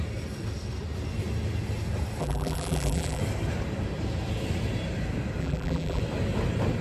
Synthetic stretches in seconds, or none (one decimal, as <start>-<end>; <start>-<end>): 2.2-3.2; 5.4-6.0